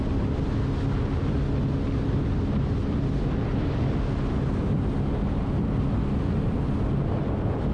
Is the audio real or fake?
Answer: real